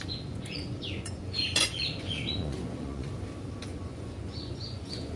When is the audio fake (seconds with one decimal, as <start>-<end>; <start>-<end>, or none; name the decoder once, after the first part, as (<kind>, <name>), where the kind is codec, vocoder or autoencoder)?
0.0-3.1 (vocoder, Vocos); 3.7-5.2